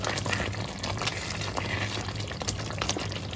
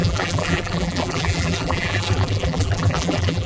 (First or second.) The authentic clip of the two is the first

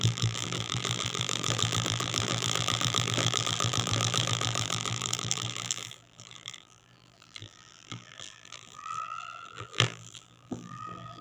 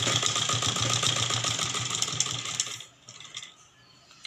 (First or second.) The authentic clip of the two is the second